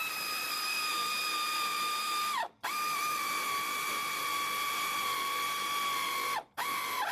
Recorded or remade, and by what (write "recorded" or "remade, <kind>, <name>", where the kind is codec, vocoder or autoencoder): remade, vocoder, BigVGAN v2